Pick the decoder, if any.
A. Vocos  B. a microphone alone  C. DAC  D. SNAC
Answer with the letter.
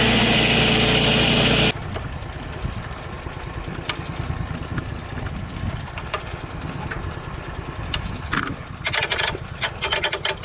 B